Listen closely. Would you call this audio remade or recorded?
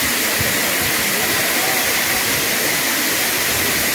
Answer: recorded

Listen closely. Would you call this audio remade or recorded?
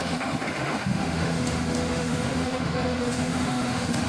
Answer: remade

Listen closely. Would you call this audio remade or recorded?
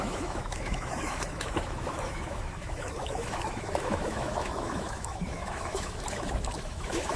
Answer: remade